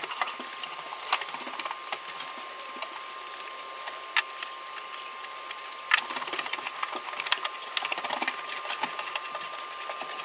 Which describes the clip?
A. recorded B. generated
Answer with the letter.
A